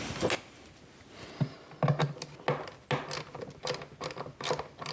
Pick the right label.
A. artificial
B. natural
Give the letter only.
B